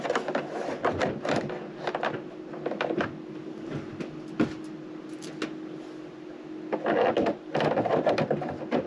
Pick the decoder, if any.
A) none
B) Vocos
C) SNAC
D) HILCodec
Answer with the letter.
A